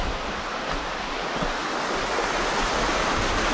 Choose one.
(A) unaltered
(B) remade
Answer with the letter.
A